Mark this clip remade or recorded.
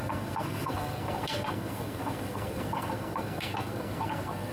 remade